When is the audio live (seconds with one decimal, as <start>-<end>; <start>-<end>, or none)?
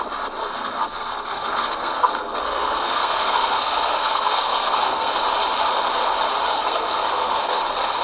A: 0.0-0.4; 5.2-6.5; 7.6-8.0